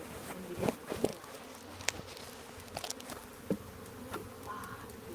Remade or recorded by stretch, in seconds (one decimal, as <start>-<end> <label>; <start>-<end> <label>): 0.0-5.1 recorded

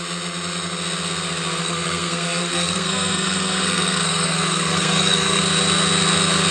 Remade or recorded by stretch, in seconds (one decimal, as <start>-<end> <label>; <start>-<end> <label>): 0.0-1.6 recorded; 1.6-5.4 remade; 5.4-6.5 recorded

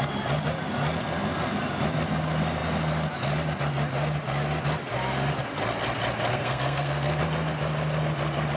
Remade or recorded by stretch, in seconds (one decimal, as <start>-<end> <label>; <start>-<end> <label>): 0.0-6.3 recorded; 6.3-7.2 remade; 7.2-8.6 recorded

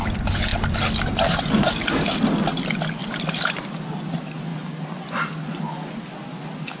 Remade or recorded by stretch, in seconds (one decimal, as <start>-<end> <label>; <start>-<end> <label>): 0.0-6.8 recorded

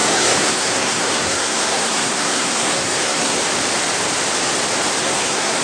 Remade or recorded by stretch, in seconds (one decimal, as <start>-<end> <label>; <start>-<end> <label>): 0.0-3.4 remade; 3.4-5.0 recorded; 5.0-5.6 remade

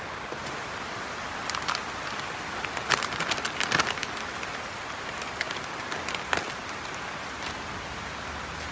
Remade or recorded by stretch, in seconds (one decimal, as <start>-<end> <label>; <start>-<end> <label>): 0.0-8.7 recorded

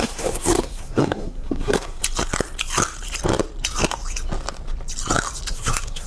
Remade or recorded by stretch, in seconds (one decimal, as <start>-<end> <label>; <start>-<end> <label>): 0.0-2.0 remade; 2.0-5.5 recorded; 5.5-6.1 remade

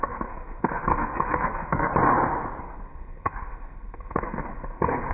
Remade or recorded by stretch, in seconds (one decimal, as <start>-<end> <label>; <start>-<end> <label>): 0.0-1.9 remade; 1.9-2.6 recorded; 2.6-5.1 remade